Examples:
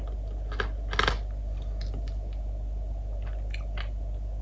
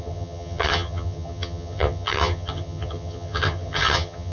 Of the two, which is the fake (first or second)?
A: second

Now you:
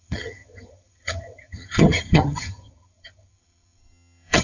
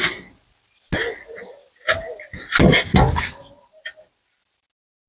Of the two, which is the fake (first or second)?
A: first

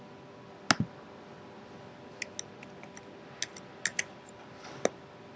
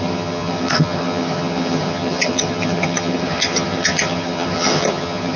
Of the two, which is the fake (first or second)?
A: second